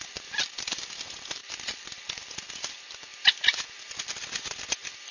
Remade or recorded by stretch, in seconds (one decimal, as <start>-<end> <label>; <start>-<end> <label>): 0.0-1.4 recorded; 1.4-2.1 remade; 2.1-5.1 recorded